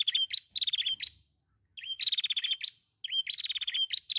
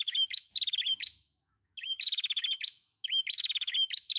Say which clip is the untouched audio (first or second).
first